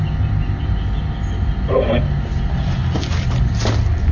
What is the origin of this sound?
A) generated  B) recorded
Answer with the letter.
B